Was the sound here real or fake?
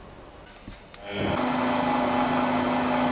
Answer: real